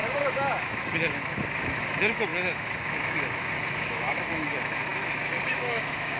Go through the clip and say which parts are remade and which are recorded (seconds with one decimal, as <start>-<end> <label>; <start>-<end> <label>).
0.0-6.2 remade